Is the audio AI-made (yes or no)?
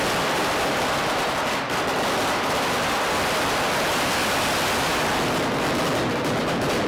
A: no